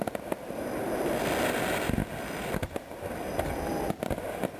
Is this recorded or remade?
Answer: recorded